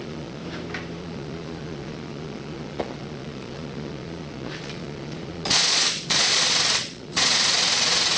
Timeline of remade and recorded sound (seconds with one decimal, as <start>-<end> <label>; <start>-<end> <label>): 0.0-0.4 remade; 0.4-1.0 recorded; 1.0-8.2 remade